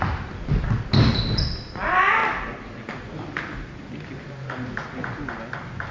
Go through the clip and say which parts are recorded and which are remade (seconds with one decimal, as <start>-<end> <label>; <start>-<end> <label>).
0.0-5.9 recorded

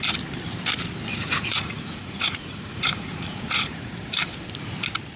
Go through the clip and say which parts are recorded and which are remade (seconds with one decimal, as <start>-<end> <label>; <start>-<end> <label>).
0.0-1.1 recorded; 1.1-3.9 remade; 3.9-5.2 recorded

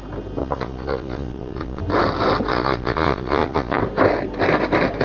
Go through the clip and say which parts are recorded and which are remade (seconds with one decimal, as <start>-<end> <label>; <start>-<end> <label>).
0.0-0.4 recorded; 0.4-1.8 remade; 1.8-2.5 recorded; 2.5-3.8 remade; 3.8-5.0 recorded

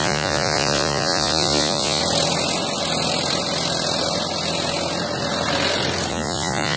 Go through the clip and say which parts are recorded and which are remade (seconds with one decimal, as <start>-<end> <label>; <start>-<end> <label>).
0.0-2.0 remade; 2.0-6.1 recorded; 6.1-6.8 remade

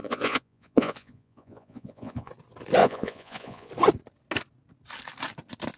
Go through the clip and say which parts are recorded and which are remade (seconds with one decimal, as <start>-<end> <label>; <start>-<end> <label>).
0.0-2.3 remade; 2.3-2.8 recorded; 2.8-3.7 remade; 3.7-5.8 recorded

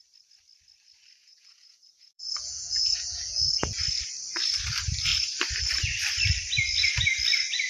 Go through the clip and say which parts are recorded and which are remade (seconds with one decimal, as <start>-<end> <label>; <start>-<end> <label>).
0.0-1.2 recorded; 1.2-3.8 remade; 3.8-7.7 recorded

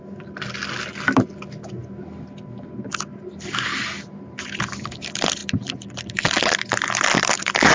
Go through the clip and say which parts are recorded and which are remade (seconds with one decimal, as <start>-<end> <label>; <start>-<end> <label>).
0.0-7.7 recorded